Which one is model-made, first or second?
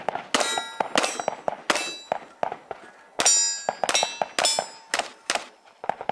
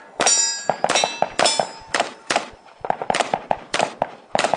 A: second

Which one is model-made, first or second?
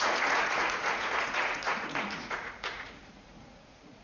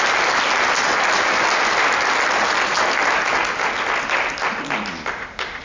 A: first